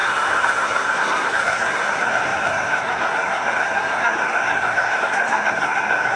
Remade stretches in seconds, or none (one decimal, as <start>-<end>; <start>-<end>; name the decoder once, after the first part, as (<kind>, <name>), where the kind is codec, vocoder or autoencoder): 0.0-6.2 (codec, SNAC)